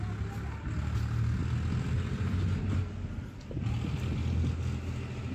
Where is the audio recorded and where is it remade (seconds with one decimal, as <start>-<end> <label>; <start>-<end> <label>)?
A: 0.0-5.3 recorded